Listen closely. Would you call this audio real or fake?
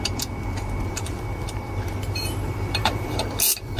fake